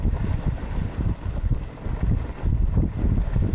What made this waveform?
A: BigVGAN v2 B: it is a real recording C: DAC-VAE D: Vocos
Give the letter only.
B